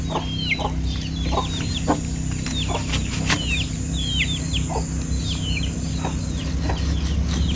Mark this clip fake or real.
real